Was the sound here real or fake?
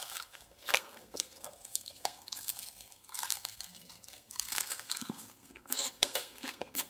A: fake